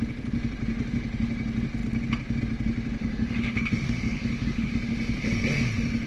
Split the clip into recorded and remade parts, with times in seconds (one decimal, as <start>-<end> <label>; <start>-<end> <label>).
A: 0.0-3.0 recorded; 3.0-4.7 remade; 4.7-6.1 recorded